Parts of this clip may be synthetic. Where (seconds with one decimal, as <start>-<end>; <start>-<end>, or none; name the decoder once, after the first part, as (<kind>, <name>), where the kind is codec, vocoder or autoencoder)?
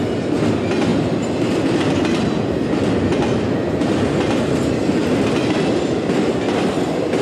none